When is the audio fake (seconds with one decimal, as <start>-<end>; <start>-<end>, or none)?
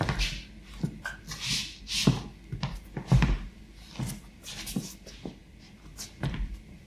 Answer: none